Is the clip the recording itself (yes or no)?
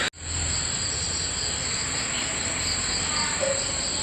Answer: yes